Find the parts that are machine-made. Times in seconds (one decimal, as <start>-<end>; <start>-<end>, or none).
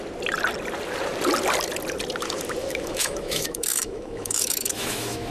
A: 2.6-5.3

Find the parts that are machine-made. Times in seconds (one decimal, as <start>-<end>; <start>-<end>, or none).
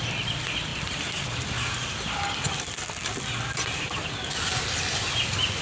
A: none